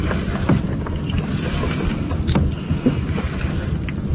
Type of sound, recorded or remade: recorded